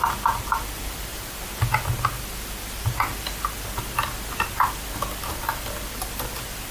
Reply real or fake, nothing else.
real